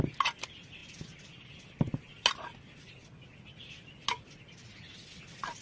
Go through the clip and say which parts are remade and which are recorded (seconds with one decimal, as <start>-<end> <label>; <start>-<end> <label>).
0.0-5.6 recorded